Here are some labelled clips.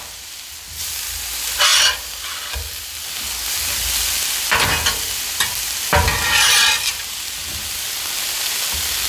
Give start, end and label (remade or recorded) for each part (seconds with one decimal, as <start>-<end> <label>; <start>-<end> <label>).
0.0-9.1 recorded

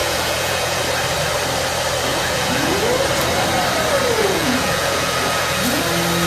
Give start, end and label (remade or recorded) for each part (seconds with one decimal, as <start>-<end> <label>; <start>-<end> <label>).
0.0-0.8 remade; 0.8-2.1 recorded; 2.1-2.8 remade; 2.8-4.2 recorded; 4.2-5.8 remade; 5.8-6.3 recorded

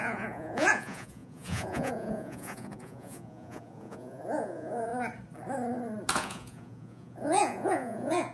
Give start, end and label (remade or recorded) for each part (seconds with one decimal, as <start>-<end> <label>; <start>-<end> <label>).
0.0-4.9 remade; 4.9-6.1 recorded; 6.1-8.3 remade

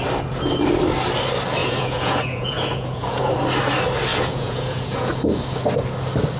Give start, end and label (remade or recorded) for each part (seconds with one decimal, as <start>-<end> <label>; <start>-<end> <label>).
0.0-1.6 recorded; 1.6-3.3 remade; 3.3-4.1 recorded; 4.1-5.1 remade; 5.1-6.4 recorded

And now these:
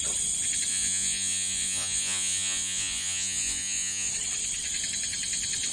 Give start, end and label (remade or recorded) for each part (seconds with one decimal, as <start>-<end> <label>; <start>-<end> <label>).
0.0-0.7 recorded; 0.7-4.1 remade; 4.1-5.7 recorded

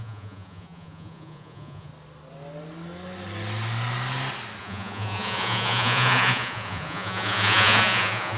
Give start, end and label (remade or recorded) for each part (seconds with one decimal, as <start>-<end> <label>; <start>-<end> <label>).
0.0-1.9 remade; 1.9-4.6 recorded; 4.6-8.4 remade